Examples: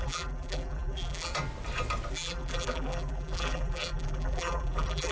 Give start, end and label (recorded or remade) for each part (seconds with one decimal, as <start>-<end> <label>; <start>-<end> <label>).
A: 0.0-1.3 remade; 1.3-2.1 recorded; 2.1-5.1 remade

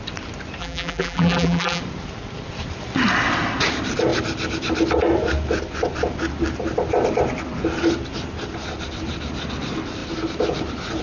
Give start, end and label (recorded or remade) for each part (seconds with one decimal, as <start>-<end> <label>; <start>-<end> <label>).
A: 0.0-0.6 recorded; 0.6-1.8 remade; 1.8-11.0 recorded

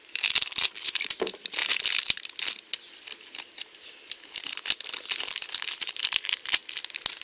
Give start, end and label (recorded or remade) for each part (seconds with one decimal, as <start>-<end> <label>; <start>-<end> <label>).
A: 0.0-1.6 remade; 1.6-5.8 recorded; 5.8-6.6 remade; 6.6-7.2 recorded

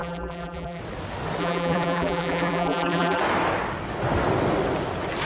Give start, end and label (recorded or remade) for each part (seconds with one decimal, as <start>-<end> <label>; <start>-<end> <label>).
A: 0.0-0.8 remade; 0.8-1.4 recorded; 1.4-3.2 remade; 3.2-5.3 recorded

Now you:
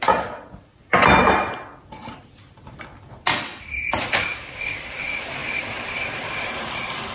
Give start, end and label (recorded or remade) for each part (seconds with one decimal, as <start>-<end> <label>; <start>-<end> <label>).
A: 0.0-4.3 recorded; 4.3-4.9 remade; 4.9-5.4 recorded; 5.4-6.6 remade; 6.6-7.1 recorded

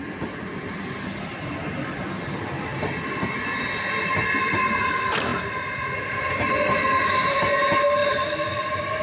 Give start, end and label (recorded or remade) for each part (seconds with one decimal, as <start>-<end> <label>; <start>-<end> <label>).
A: 0.0-2.7 recorded; 2.7-3.2 remade; 3.2-8.0 recorded; 8.0-9.0 remade

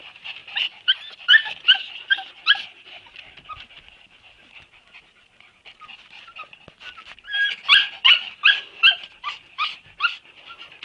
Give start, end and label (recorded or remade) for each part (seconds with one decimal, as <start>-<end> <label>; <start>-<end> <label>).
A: 0.0-0.4 recorded; 0.4-3.5 remade; 3.5-10.8 recorded